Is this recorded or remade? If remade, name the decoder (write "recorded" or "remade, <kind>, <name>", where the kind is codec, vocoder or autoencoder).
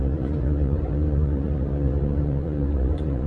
remade, vocoder, Vocos